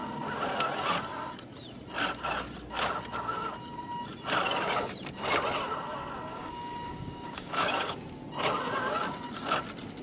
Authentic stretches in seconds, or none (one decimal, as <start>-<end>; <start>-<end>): 0.0-6.3; 8.0-10.0